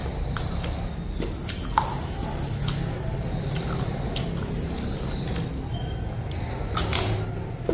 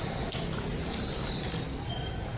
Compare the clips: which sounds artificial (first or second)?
second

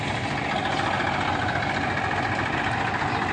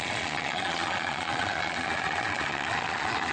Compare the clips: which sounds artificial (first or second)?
second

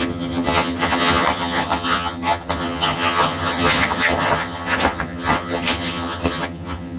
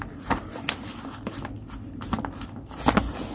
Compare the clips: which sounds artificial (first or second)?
first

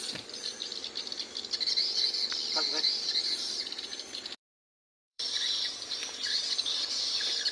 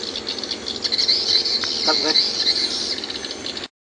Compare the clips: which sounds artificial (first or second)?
first